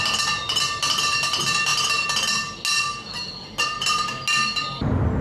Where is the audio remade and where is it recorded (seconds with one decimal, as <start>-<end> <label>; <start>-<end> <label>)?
0.0-5.2 recorded